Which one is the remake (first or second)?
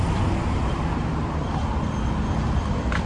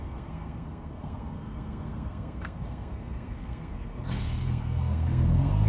second